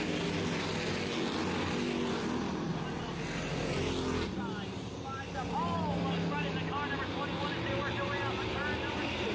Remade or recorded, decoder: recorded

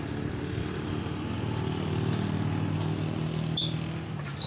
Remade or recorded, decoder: recorded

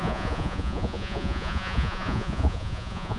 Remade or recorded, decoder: remade, vocoder, Vocos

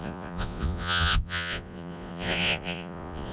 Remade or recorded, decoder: remade, vocoder, Vocos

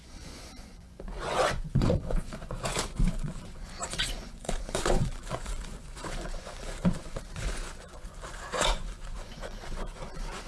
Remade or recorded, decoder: remade, vocoder, Vocos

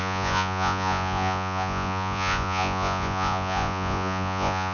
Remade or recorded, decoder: remade, vocoder, Vocos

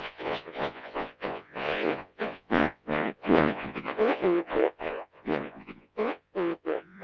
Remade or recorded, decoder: remade, vocoder, Vocos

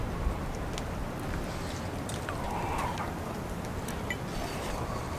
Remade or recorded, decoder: recorded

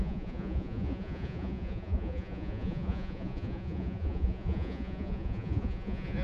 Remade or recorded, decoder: remade, vocoder, Vocos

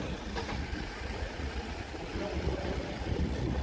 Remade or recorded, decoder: remade, vocoder, Vocos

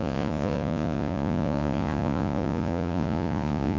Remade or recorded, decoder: remade, vocoder, Vocos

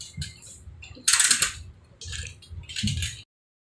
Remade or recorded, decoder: recorded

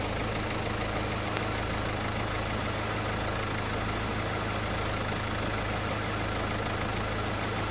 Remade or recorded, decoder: recorded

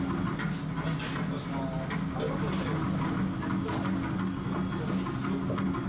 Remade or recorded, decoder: recorded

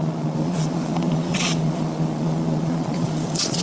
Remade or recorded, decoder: remade, vocoder, Vocos